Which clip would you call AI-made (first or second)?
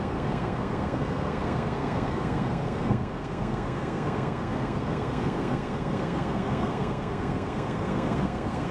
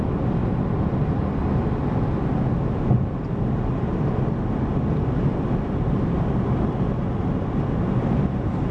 first